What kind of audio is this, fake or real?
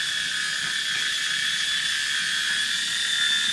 real